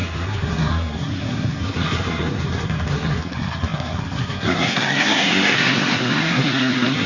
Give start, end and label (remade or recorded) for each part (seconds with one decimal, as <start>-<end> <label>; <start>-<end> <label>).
0.0-7.1 remade